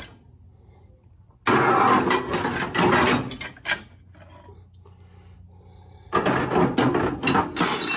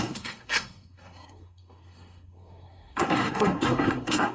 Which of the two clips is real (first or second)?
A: first